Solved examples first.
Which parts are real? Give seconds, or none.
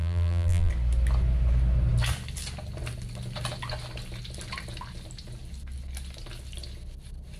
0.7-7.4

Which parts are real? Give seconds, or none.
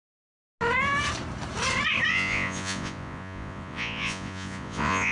0.0-2.1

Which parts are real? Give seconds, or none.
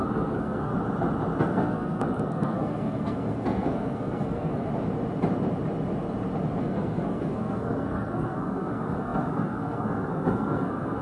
0.7-1.4; 4.7-6.6